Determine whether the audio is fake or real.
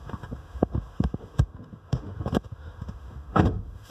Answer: fake